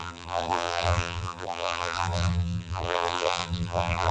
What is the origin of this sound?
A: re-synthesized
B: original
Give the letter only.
A